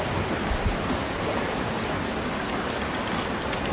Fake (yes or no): no